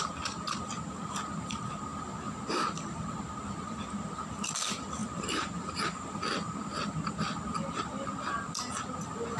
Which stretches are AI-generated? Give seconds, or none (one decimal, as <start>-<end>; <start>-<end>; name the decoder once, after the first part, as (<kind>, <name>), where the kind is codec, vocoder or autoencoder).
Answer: 5.0-6.2 (vocoder, BigVGAN v2)